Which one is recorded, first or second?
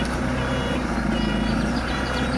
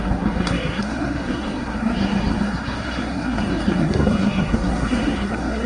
first